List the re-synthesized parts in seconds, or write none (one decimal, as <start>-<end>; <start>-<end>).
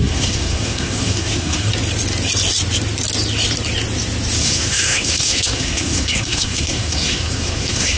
0.0-1.7; 4.4-8.0